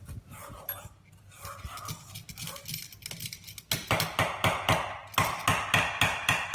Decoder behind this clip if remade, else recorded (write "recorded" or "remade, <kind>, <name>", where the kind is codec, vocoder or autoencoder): recorded